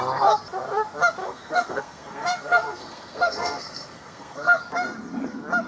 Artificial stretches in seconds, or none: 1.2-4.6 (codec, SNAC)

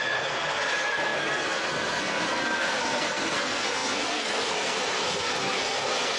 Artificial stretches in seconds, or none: 0.0-6.2 (codec, SNAC)